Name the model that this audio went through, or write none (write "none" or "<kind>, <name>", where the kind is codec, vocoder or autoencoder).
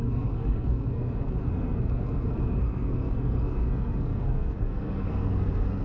codec, SNAC